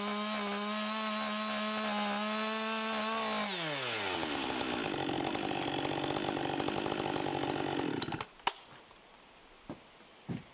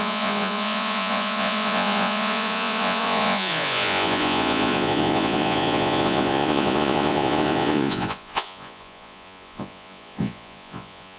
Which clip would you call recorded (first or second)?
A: first